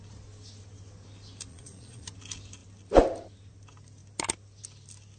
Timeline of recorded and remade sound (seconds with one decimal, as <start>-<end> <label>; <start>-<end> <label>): 0.0-1.5 recorded; 1.5-2.1 remade; 2.1-5.2 recorded